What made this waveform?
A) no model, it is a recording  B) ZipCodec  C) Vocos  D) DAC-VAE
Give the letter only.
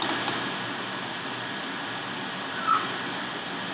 A